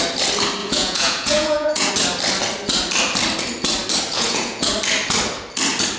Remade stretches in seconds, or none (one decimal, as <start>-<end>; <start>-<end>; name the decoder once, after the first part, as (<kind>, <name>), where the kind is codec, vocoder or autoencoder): 0.6-1.9 (vocoder, Vocos); 4.1-4.7